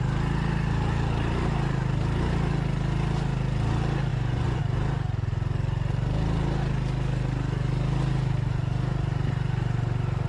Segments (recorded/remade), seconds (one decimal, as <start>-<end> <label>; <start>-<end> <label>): 0.0-4.1 recorded; 4.1-4.6 remade; 4.6-10.3 recorded

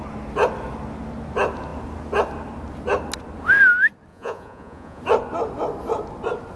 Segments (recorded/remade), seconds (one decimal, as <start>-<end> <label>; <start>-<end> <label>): 0.0-4.1 recorded; 4.1-5.0 remade; 5.0-6.6 recorded